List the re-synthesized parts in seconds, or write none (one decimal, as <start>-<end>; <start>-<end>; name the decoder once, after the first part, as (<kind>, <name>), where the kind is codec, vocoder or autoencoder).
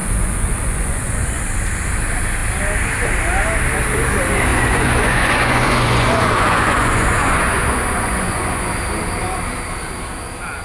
0.0-1.4 (vocoder, Vocos); 4.5-8.7